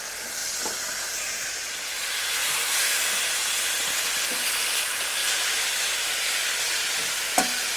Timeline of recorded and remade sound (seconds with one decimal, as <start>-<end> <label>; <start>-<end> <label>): 0.0-2.4 remade; 2.4-4.1 recorded; 4.1-5.2 remade; 5.2-6.4 recorded; 6.4-7.8 remade